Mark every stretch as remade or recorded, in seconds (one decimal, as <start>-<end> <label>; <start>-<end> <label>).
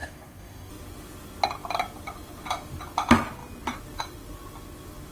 0.0-0.7 remade; 0.7-5.1 recorded